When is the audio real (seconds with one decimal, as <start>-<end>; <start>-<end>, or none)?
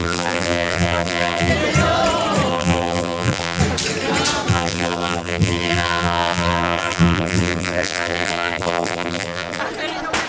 1.5-2.5; 3.6-4.5; 9.6-10.3